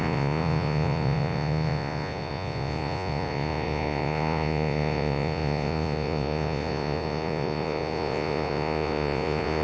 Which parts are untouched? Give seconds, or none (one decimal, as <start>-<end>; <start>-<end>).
none